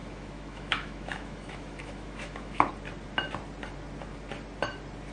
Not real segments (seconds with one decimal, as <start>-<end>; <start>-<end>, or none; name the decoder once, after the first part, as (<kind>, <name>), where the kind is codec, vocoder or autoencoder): 0.0-2.7 (autoencoder, DAC-VAE)